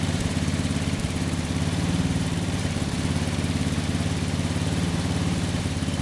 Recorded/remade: remade